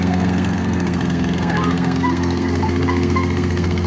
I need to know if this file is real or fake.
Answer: fake